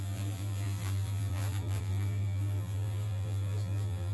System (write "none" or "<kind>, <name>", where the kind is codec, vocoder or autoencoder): vocoder, BigVGAN v2